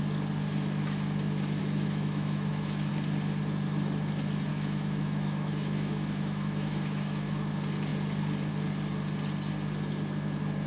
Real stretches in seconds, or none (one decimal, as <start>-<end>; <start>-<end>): 0.0-1.6; 2.9-4.5; 7.5-10.7